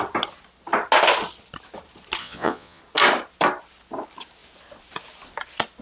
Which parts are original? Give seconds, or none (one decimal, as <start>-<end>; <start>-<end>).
0.0-2.2; 2.8-5.8